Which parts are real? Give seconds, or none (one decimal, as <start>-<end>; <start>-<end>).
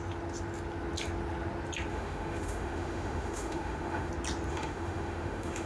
0.0-1.9; 4.1-4.5